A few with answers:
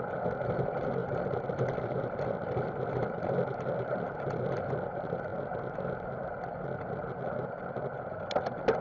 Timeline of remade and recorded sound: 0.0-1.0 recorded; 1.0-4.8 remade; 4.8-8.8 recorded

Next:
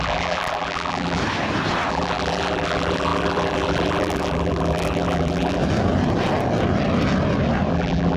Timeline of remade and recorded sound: 0.0-1.2 remade; 1.2-1.9 recorded; 1.9-5.6 remade; 5.6-7.7 recorded; 7.7-8.2 remade

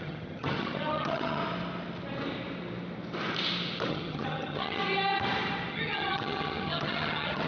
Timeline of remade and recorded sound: 0.0-1.4 remade; 1.4-3.9 recorded; 3.9-4.8 remade; 4.8-5.7 recorded; 5.7-7.5 remade

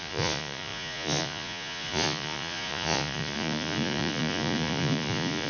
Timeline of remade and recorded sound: 0.0-5.5 remade

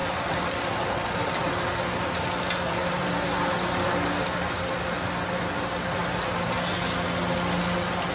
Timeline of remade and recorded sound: 0.0-8.1 recorded

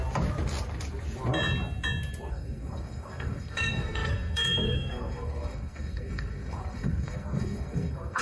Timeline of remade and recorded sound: 0.0-2.3 recorded; 2.3-8.2 remade